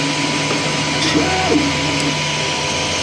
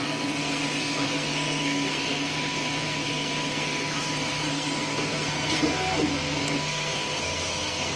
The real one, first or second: first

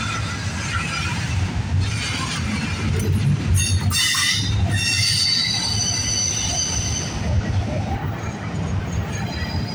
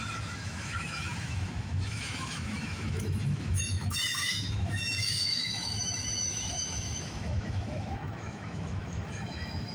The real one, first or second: first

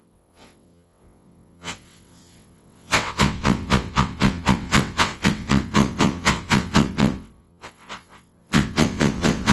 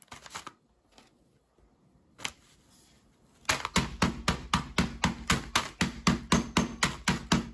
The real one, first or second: second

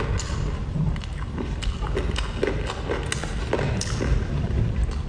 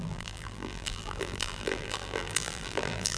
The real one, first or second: first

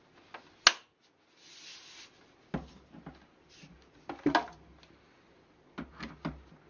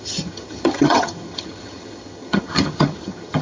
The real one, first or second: first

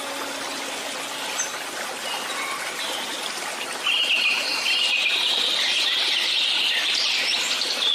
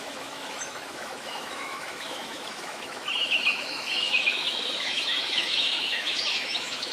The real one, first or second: first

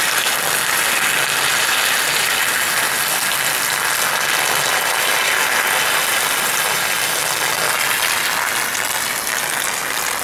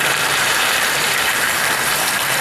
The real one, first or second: first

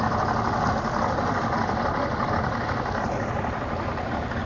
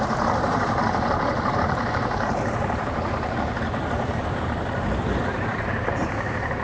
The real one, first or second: first